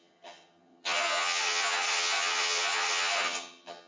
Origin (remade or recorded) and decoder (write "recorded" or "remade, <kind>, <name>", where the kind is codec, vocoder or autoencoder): remade, vocoder, HiFi-GAN